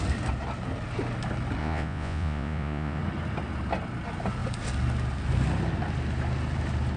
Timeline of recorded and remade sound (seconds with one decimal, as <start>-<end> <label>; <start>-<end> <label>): 0.0-1.6 recorded; 1.6-3.0 remade; 3.0-7.0 recorded